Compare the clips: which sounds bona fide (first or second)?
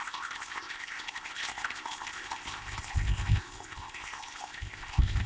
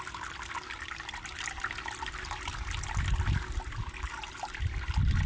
second